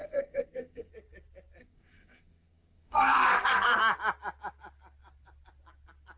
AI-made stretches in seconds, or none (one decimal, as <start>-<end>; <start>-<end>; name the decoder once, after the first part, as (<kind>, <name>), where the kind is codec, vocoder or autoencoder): 0.0-0.9 (codec, SNAC); 1.6-3.8